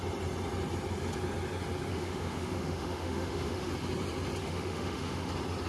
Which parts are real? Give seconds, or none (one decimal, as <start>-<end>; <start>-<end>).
0.0-1.9; 3.7-4.4; 5.3-5.7

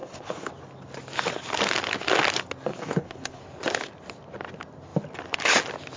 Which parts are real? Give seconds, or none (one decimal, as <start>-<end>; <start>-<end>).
0.5-2.7; 3.4-6.0